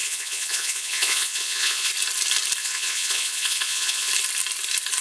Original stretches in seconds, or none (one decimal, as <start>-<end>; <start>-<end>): 1.9-2.6; 4.1-5.0